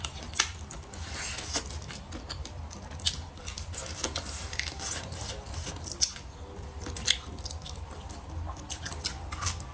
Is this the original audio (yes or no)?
yes